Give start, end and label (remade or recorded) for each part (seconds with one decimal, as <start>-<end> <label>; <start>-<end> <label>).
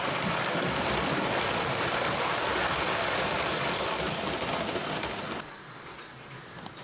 0.0-6.8 recorded